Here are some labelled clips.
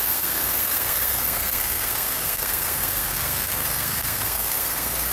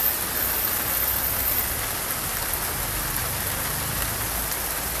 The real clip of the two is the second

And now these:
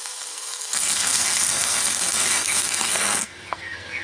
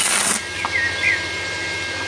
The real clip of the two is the second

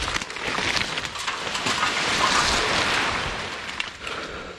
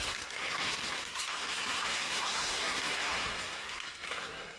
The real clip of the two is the first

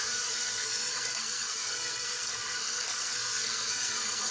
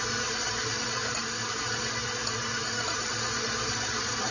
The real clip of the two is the second